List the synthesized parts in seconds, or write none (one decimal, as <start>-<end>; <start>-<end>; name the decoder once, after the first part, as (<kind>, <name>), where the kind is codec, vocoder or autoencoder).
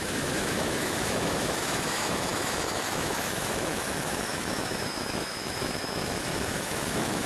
0.0-7.3 (autoencoder, DAC-VAE)